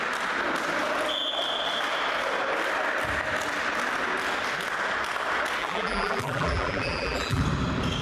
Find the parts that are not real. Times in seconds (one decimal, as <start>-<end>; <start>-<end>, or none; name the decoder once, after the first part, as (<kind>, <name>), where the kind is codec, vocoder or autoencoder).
5.6-7.4 (vocoder, BigVGAN v2)